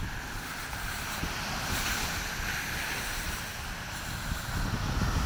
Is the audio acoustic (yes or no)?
yes